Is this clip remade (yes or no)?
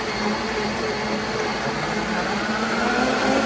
no